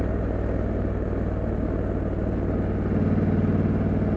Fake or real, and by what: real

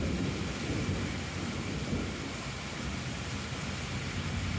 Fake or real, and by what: real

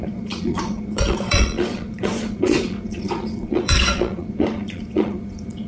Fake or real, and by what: fake, vocoder, Vocos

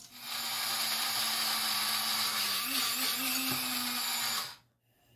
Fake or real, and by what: real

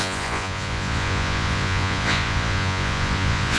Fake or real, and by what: fake, vocoder, Vocos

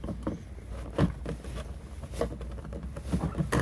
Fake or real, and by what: real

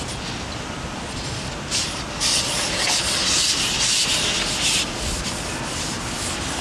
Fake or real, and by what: real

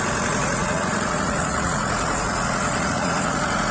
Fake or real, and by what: fake, vocoder, Vocos